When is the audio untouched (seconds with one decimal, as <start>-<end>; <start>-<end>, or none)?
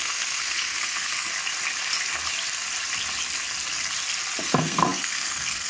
1.3-4.4